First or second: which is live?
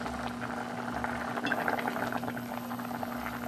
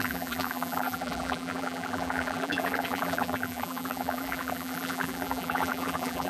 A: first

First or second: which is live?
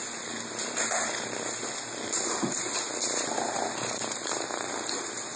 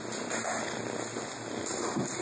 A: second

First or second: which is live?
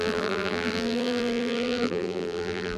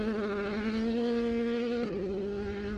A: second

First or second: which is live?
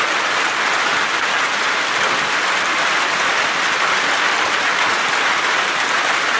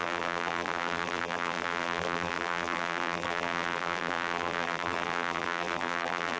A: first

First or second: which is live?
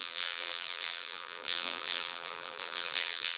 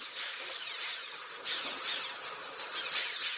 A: second